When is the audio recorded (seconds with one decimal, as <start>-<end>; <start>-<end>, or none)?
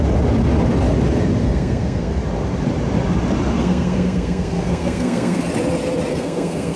0.0-1.4; 2.2-3.6; 5.4-6.1